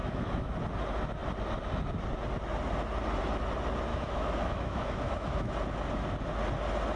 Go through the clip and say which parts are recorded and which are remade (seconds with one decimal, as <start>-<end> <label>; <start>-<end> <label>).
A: 0.0-0.5 remade; 0.5-3.9 recorded; 3.9-5.5 remade; 5.5-7.0 recorded